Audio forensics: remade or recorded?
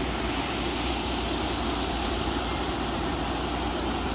recorded